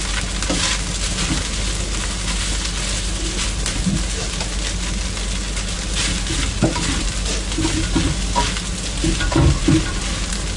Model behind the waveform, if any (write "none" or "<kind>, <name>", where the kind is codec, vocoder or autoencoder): none